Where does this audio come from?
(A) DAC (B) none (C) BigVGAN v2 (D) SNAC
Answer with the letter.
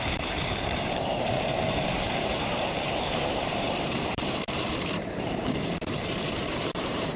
C